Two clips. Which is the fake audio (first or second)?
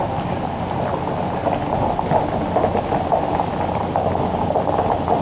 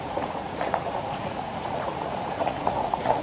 second